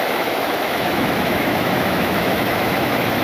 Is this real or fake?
fake